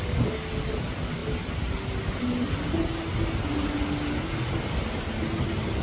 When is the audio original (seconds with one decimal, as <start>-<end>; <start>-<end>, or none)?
0.0-5.8